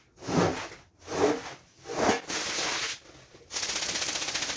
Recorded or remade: recorded